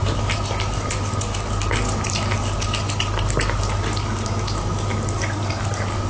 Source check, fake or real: real